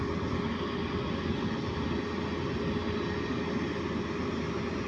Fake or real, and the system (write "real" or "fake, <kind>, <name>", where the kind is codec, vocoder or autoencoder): real